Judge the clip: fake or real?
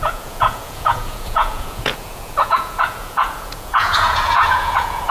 fake